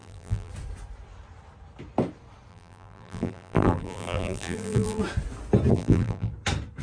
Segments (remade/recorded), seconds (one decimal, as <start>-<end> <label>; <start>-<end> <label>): 0.0-0.5 remade; 0.5-2.5 recorded; 2.5-5.0 remade; 5.0-5.7 recorded; 5.7-6.3 remade; 6.3-6.8 recorded